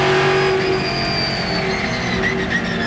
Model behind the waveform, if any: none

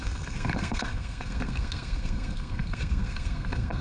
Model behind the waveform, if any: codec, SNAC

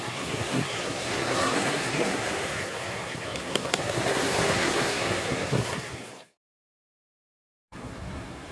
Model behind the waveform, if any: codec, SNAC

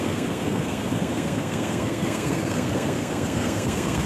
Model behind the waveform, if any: codec, SNAC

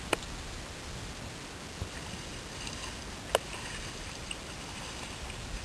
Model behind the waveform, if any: none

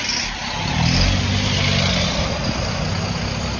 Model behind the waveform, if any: none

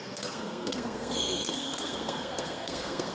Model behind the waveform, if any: codec, SNAC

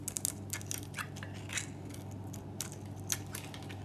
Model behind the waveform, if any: none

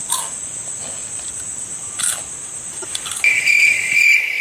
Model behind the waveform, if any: none